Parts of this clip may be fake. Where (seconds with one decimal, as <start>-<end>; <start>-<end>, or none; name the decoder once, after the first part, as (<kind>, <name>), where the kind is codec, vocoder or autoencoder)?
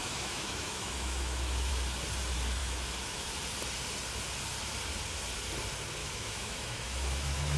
0.0-1.7 (autoencoder, DAC-VAE); 2.6-3.3; 6.0-7.6